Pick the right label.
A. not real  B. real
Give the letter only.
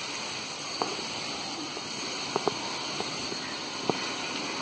B